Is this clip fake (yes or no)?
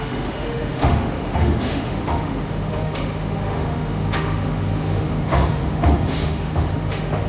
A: yes